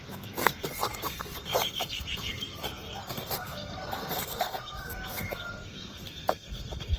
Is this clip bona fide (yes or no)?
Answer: no